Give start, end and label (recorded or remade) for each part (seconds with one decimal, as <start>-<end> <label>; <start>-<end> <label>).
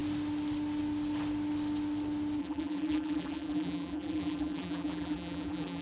0.0-2.4 recorded; 2.4-5.8 remade